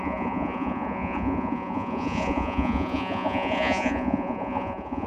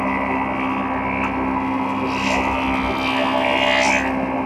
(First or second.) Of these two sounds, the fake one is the first